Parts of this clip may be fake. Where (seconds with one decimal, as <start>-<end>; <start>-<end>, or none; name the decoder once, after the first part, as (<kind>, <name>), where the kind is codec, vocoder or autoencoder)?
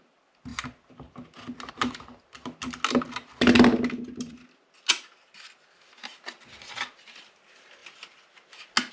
none